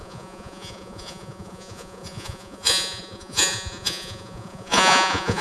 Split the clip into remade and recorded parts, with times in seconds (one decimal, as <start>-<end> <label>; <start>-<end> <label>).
0.0-5.4 remade